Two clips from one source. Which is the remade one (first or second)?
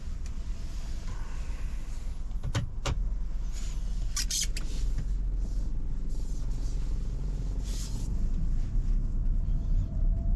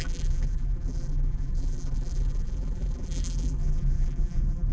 second